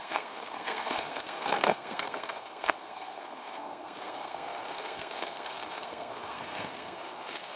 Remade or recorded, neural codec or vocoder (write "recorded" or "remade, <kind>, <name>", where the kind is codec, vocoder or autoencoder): remade, codec, SNAC